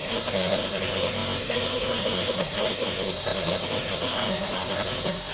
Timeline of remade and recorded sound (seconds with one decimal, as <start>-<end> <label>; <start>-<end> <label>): 0.0-5.3 remade